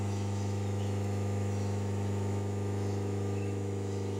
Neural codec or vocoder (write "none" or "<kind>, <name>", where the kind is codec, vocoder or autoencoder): autoencoder, DAC-VAE